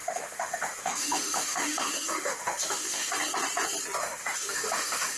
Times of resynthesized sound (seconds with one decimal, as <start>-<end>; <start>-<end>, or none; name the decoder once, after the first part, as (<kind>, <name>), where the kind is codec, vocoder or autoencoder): 0.0-3.1 (autoencoder, DAC-VAE); 4.0-5.2